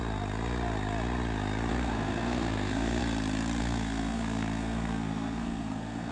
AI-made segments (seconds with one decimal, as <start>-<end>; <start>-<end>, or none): 1.7-3.0; 3.6-6.1

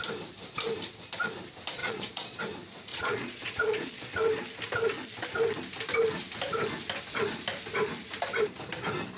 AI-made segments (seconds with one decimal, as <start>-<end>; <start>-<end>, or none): 1.8-2.4; 2.9-4.1

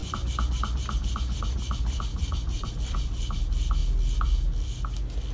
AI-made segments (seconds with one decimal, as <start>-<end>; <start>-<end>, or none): 2.1-2.7

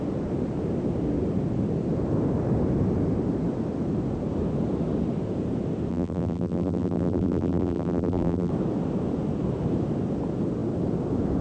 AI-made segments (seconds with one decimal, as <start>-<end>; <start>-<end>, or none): 5.9-8.5

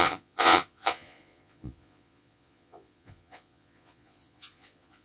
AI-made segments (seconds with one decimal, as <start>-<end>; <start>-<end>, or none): 0.0-5.0

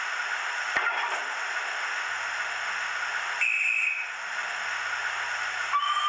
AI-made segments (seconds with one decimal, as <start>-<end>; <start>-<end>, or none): none

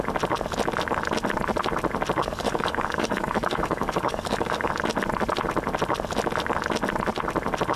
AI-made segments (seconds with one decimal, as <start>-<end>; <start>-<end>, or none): 2.2-4.7

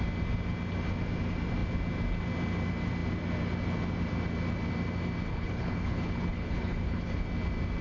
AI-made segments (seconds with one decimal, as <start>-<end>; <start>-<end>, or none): 5.3-7.2